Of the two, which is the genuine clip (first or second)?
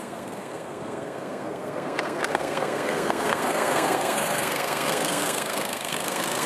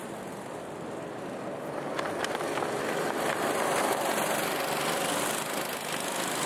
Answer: second